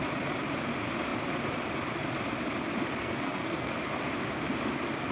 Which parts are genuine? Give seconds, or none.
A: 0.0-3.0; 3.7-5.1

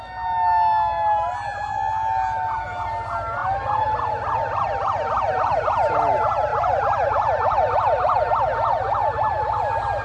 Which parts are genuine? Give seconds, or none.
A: 0.0-6.5; 8.3-10.0

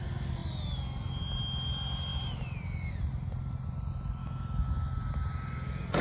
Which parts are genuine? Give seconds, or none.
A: 0.0-4.2; 4.9-6.0

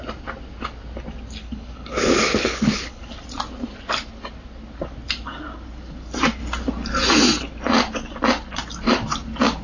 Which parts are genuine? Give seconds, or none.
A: 0.0-1.4; 3.1-9.6

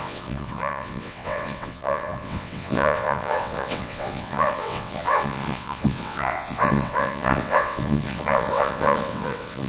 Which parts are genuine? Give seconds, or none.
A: none

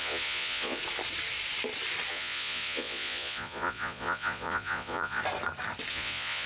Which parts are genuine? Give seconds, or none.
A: 0.8-2.1; 5.2-5.9

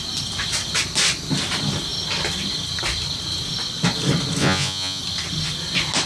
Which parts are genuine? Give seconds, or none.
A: 0.0-4.4; 5.0-6.1

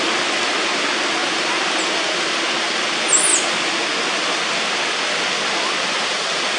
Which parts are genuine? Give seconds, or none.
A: 0.0-6.6